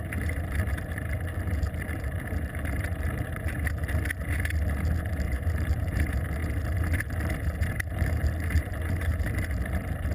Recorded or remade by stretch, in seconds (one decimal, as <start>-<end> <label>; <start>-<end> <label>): 0.0-3.8 remade; 3.8-5.0 recorded; 5.0-6.4 remade; 6.4-7.7 recorded; 7.7-10.1 remade